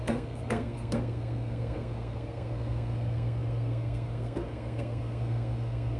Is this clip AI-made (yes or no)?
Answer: yes